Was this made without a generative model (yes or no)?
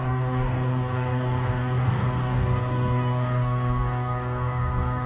no